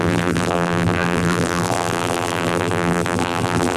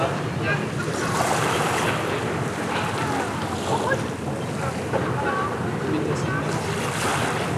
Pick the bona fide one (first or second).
second